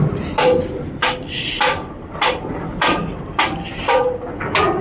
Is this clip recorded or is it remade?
recorded